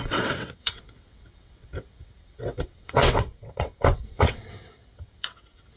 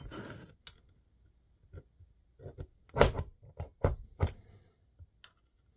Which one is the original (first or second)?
second